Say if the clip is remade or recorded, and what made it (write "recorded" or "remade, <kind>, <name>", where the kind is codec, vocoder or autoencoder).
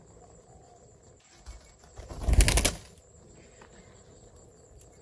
recorded